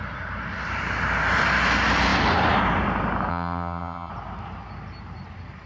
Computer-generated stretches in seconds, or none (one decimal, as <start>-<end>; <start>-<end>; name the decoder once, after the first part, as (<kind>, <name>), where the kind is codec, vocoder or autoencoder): 3.3-4.1 (vocoder, HiFi-GAN)

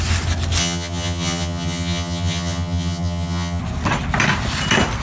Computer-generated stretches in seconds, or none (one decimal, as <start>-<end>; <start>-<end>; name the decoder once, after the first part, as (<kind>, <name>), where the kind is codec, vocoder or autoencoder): 0.6-3.6 (vocoder, HiFi-GAN)

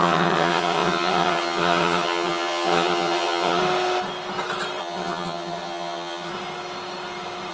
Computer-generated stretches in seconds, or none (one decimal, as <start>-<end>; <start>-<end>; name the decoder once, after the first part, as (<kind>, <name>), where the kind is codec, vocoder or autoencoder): 0.0-3.6 (vocoder, HiFi-GAN); 4.8-6.3

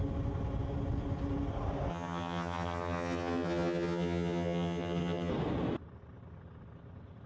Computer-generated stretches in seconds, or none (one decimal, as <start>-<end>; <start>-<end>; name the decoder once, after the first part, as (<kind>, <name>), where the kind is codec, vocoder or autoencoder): 1.9-5.3 (vocoder, HiFi-GAN)

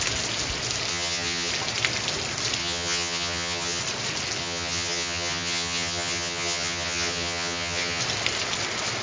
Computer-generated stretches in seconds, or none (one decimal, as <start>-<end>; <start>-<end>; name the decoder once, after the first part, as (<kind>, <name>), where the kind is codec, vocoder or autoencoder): 0.9-1.5 (vocoder, HiFi-GAN); 2.6-3.8; 4.4-8.0